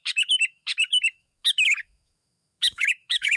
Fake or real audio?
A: fake